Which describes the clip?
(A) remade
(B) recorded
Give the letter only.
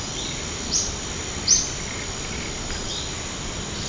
B